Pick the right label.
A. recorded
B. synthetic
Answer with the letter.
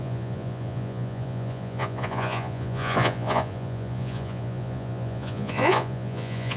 B